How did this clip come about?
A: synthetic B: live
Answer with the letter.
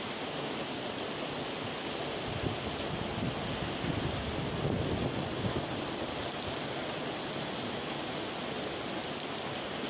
B